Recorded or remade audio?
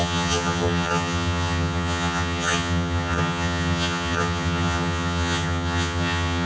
remade